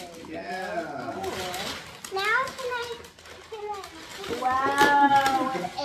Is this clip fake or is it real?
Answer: real